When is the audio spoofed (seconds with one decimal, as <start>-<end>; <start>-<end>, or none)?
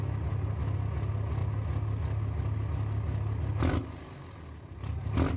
none